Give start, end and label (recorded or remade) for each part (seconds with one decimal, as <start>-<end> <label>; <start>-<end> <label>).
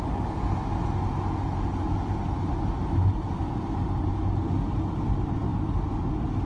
0.0-6.5 recorded